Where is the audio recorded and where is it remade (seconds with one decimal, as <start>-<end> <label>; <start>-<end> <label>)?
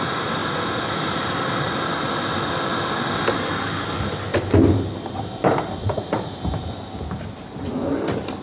0.0-5.8 recorded; 5.8-6.4 remade; 6.4-8.4 recorded